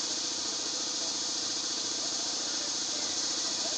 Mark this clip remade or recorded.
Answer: recorded